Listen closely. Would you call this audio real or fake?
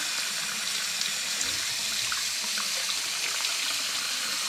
real